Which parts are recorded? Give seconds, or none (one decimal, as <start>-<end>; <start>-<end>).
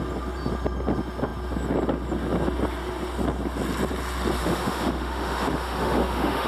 0.0-4.4